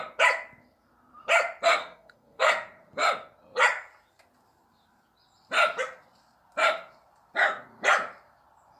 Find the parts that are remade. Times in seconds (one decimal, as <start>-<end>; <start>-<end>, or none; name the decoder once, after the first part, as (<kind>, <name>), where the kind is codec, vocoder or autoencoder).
1.8-2.5 (codec, SNAC)